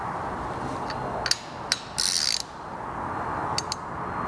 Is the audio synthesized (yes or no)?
no